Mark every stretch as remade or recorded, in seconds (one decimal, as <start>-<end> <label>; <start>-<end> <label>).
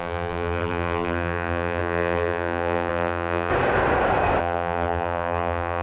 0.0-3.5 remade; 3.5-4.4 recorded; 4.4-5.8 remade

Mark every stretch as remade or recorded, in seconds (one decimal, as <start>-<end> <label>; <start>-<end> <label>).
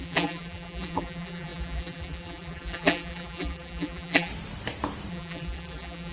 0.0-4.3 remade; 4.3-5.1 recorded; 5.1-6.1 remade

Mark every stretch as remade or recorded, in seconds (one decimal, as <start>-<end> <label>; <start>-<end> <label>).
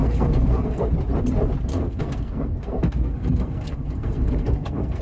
0.0-0.9 remade; 0.9-1.7 recorded; 1.7-5.0 remade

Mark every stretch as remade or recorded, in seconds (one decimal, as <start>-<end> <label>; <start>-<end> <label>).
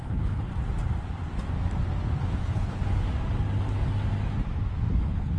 0.0-0.5 remade; 0.5-2.3 recorded; 2.3-3.1 remade; 3.1-4.9 recorded; 4.9-5.4 remade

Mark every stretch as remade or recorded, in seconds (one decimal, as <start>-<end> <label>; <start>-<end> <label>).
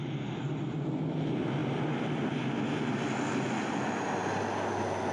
0.0-5.1 recorded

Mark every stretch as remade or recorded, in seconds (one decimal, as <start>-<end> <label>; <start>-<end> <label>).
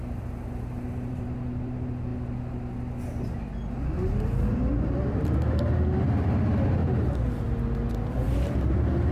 0.0-2.1 remade; 2.1-4.7 recorded; 4.7-6.8 remade; 6.8-8.1 recorded; 8.1-9.1 remade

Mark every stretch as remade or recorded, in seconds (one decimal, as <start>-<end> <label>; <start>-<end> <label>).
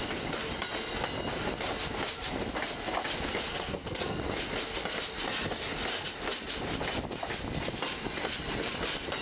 0.0-3.5 recorded; 3.5-4.2 remade; 4.2-9.2 recorded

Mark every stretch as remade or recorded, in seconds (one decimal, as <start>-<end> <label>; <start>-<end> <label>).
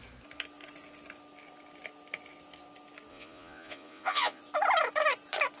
0.0-3.1 recorded; 3.1-4.4 remade; 4.4-5.6 recorded